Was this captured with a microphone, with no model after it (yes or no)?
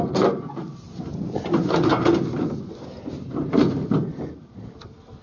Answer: yes